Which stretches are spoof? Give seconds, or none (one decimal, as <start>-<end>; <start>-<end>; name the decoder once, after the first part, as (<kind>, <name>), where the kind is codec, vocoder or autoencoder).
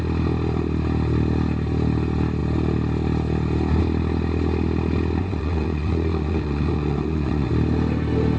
5.2-7.5 (vocoder, Vocos)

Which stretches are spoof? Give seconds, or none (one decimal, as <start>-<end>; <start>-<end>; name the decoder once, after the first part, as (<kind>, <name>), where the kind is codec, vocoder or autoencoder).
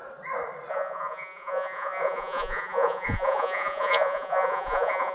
0.7-5.1 (vocoder, Vocos)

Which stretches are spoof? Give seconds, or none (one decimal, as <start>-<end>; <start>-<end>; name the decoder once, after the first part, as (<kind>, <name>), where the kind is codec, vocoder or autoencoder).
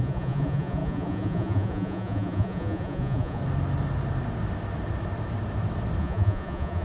0.0-3.4 (vocoder, Vocos); 6.0-6.8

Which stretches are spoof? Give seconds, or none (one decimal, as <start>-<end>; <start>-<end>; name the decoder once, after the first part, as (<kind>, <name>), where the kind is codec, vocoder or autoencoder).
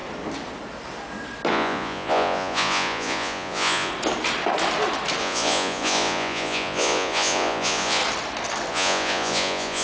1.5-3.9 (vocoder, Vocos); 5.2-8.0; 8.7-9.8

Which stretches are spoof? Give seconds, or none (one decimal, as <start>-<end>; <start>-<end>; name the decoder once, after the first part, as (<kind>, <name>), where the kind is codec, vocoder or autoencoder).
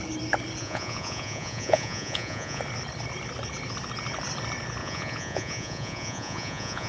0.6-2.6 (vocoder, Vocos); 4.8-6.9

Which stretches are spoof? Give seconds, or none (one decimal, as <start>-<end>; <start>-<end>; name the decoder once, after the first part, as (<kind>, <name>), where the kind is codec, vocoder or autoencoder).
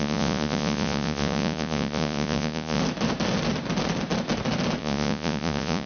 0.0-2.8 (vocoder, Vocos); 4.8-5.9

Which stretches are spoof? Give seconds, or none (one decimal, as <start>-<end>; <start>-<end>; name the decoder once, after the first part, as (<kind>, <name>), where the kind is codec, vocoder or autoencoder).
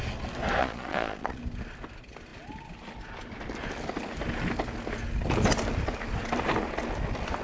0.6-1.4 (vocoder, Vocos)